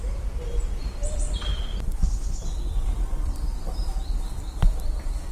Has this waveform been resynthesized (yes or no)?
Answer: yes